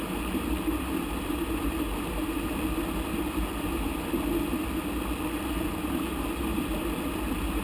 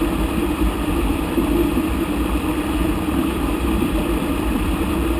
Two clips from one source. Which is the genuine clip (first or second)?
first